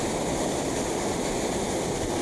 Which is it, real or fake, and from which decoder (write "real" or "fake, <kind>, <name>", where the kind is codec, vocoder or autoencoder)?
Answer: real